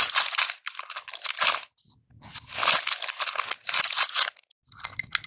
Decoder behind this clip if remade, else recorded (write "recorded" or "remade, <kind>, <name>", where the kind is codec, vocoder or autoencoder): recorded